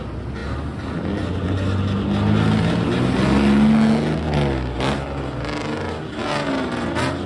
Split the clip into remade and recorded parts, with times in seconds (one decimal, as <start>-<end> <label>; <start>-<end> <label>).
0.0-7.3 recorded